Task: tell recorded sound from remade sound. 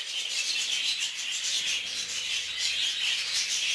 recorded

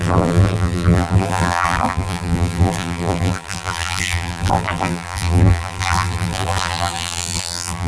remade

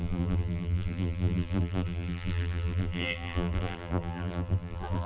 remade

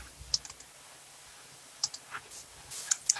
recorded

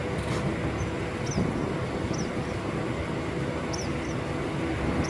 recorded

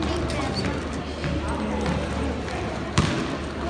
recorded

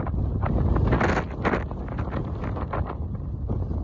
recorded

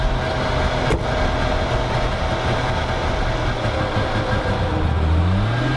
recorded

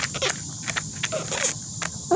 recorded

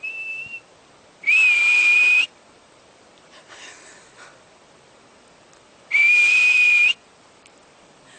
remade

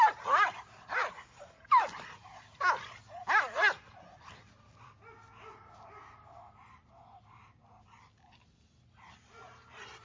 recorded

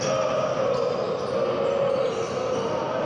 recorded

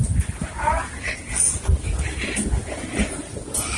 recorded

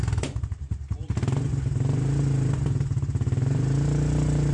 recorded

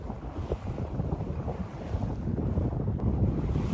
recorded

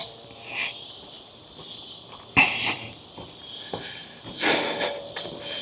remade